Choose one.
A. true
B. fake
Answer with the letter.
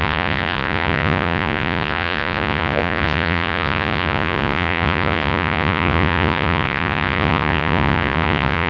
B